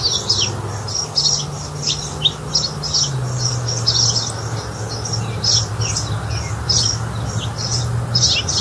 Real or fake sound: real